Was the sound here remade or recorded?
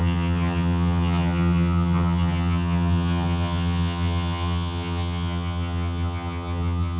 remade